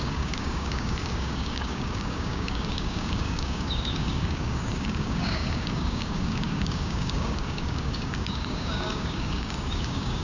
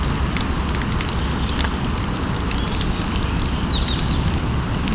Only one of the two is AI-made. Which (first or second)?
first